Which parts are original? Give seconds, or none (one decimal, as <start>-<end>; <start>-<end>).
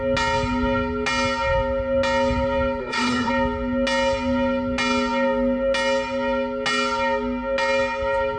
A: 0.0-2.8; 3.3-8.4